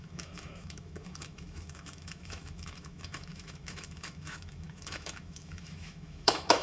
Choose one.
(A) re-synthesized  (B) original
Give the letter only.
A